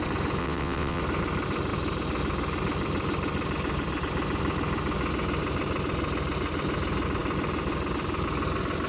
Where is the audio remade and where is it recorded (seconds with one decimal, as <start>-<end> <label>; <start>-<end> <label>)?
0.0-0.4 recorded; 0.4-1.0 remade; 1.0-8.9 recorded